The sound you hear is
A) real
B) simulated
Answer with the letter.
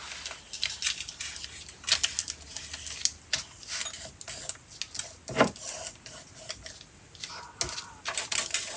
A